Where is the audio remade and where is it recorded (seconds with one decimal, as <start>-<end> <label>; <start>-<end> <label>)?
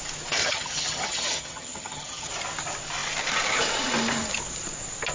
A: 0.0-0.4 recorded; 0.4-2.3 remade; 2.3-5.1 recorded